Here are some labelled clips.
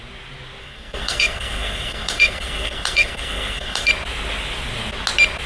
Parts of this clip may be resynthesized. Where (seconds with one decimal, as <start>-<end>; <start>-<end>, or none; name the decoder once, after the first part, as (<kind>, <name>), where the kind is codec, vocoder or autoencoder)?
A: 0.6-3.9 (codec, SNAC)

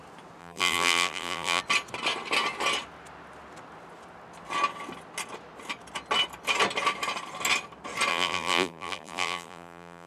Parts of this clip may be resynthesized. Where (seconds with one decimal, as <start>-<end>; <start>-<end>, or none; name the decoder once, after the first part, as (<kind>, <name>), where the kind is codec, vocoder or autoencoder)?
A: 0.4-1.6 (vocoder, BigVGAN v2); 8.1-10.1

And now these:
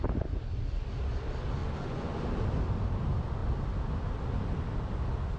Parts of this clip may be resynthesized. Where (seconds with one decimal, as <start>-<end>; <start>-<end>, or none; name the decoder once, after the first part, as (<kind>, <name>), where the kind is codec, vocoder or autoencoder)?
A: 1.6-2.2 (vocoder, Vocos)

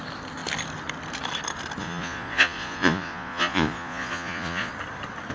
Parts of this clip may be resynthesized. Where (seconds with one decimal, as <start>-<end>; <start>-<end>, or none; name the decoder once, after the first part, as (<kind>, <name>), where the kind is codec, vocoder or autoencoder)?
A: 1.8-4.7 (vocoder, Vocos)